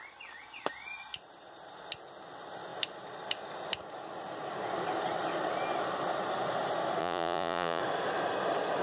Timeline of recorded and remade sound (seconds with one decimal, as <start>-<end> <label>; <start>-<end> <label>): 0.0-7.0 recorded; 7.0-7.8 remade; 7.8-8.8 recorded